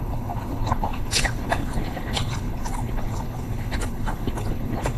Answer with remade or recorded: remade